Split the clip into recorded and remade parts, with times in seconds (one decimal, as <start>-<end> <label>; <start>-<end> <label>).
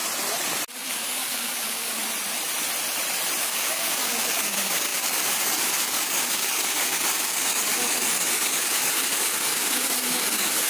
0.0-0.9 recorded; 0.9-2.0 remade; 2.0-3.4 recorded; 3.4-10.7 remade